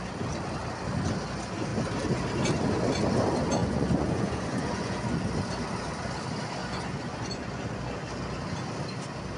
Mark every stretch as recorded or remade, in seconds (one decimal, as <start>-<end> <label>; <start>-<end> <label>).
0.0-3.6 recorded; 3.6-5.2 remade; 5.2-6.6 recorded; 6.6-7.8 remade; 7.8-9.4 recorded